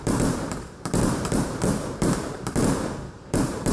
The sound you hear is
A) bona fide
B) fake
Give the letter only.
B